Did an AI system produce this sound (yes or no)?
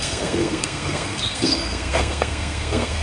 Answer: yes